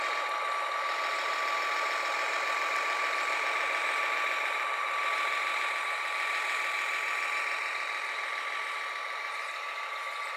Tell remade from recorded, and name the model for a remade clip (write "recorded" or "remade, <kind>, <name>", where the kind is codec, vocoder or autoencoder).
recorded